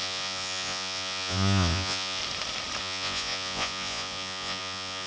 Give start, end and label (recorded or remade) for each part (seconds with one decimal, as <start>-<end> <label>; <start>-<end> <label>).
0.0-2.2 remade; 2.2-2.8 recorded; 2.8-5.1 remade